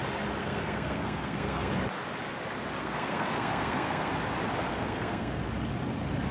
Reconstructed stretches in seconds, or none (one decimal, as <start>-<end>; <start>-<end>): 0.4-1.7; 2.8-4.1; 4.7-5.4